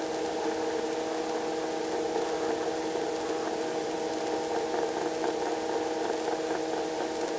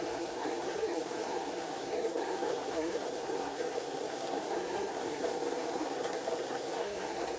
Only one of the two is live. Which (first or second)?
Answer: first